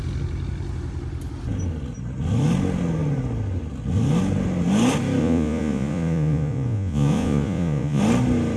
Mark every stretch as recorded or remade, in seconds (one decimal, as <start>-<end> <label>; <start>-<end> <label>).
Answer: 0.0-5.2 recorded; 5.2-8.0 remade; 8.0-8.6 recorded